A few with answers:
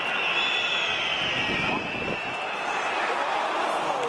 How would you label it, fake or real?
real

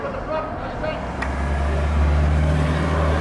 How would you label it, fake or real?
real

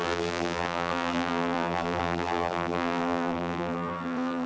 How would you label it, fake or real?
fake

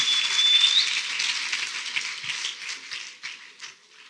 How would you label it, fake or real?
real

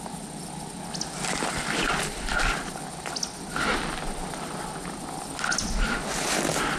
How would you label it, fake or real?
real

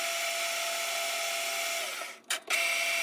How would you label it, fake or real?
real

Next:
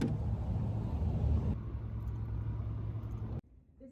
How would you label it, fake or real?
real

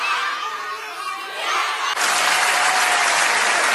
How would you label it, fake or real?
real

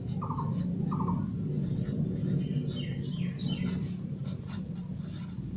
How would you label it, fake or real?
real